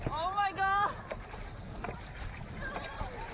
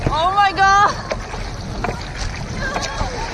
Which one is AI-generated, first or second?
first